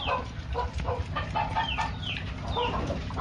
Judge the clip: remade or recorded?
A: recorded